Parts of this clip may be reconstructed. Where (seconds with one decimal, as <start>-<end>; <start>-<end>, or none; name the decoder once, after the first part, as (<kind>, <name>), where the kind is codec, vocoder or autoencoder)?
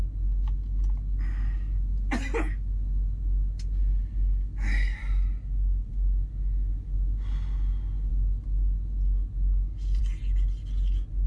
none